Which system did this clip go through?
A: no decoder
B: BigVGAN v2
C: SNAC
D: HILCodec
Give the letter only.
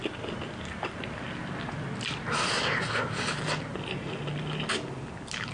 A